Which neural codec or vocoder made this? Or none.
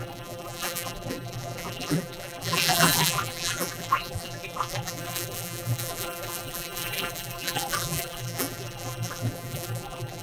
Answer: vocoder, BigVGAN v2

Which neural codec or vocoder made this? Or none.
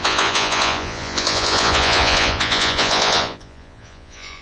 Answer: vocoder, Vocos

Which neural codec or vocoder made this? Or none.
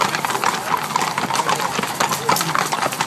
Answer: none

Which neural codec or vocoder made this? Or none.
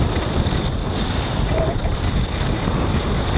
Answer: none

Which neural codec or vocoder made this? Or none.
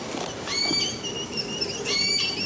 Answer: none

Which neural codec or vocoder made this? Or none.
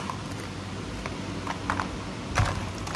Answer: none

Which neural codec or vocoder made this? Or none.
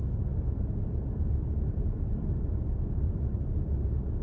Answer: none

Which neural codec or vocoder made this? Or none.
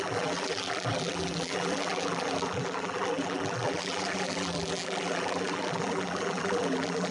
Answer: vocoder, BigVGAN v2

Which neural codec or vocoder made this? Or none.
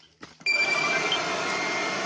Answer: none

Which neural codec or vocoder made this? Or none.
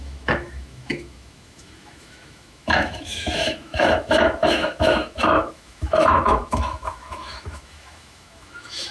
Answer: autoencoder, DAC-VAE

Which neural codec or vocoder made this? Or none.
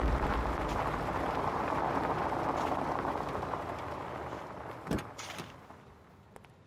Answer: none